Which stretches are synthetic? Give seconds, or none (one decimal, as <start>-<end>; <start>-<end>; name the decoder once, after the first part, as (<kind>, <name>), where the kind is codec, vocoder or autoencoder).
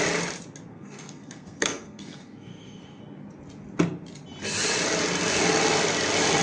0.7-3.0 (codec, SNAC)